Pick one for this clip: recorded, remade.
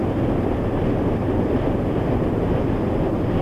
recorded